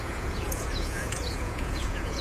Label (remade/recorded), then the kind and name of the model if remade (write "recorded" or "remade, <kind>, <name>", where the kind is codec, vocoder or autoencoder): remade, vocoder, Vocos